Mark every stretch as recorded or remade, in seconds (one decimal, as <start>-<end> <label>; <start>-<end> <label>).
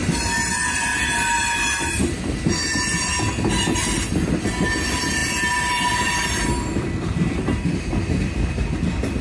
0.0-9.2 recorded